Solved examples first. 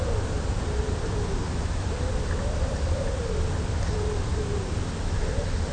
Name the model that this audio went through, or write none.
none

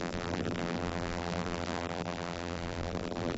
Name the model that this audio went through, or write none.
vocoder, BigVGAN v2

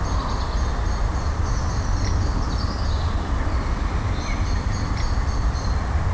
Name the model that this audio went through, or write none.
none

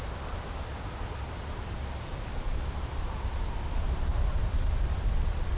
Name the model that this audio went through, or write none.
none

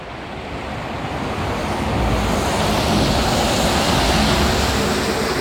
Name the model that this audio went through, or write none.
none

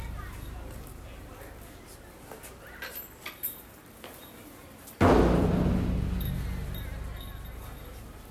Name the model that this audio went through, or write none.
none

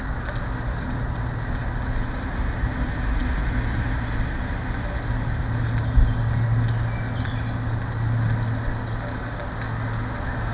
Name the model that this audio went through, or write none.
none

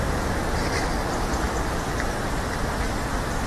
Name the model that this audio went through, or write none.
none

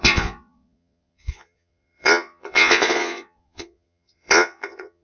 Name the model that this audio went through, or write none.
vocoder, Vocos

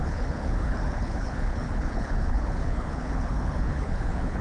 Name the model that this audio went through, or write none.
codec, HILCodec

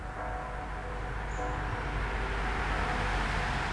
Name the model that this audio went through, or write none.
none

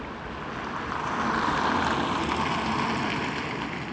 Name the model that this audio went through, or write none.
none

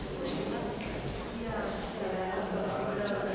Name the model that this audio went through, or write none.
none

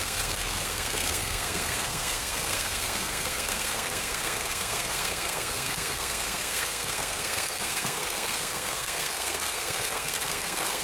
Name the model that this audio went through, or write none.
codec, SNAC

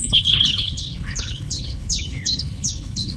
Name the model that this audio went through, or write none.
codec, HILCodec